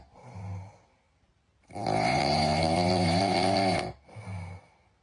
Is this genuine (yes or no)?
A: yes